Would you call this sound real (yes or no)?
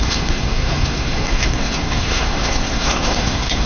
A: no